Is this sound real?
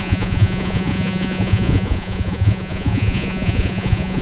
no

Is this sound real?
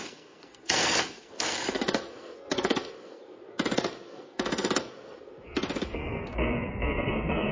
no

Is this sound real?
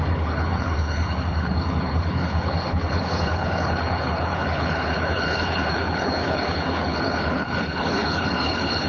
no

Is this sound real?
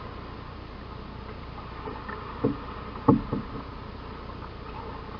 yes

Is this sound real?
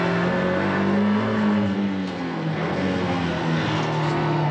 no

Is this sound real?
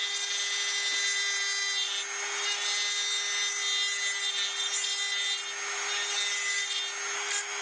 yes